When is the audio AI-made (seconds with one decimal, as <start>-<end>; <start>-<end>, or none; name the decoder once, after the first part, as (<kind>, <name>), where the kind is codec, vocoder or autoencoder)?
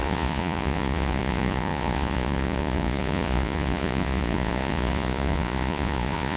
0.0-6.4 (vocoder, Vocos)